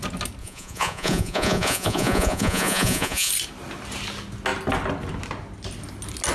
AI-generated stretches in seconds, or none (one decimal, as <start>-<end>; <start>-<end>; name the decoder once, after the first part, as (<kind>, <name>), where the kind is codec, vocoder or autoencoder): 0.4-3.3 (vocoder, Vocos)